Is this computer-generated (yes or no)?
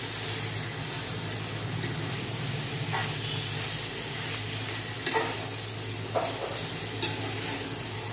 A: no